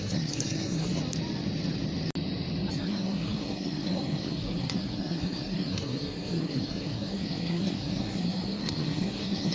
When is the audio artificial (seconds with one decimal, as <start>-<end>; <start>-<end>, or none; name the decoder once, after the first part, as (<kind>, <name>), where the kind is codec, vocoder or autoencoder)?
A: 0.0-1.0 (codec, SNAC); 2.7-9.5